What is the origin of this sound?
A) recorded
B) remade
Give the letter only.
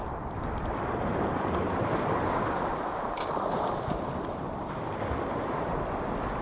A